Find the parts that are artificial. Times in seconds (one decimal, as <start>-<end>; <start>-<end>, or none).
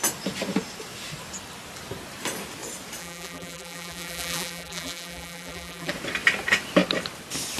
3.0-5.9